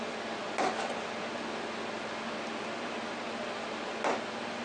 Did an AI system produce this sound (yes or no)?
no